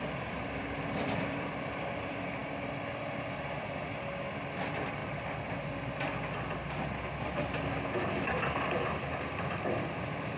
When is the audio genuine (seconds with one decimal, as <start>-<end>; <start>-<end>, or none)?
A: 2.4-4.4; 5.0-9.5